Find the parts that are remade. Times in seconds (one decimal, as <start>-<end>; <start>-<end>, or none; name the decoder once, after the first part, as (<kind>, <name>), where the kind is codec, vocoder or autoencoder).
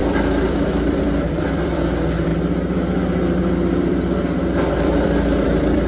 0.0-2.3 (vocoder, BigVGAN v2); 3.4-5.9